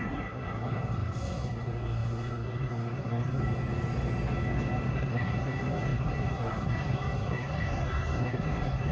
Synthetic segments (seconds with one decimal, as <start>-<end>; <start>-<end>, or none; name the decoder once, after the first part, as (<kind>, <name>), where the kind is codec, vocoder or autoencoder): 0.0-3.4 (codec, SNAC); 4.9-8.9